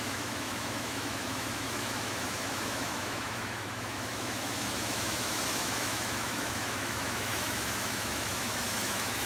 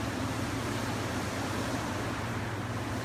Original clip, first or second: second